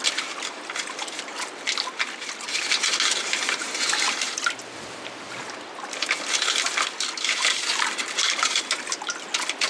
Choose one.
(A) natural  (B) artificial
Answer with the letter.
A